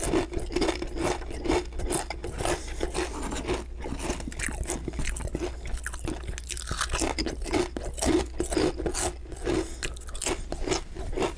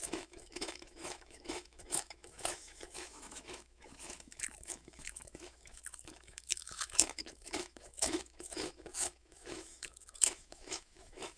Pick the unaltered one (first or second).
first